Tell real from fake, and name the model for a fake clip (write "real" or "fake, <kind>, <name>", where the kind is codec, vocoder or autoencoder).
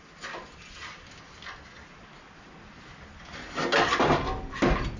real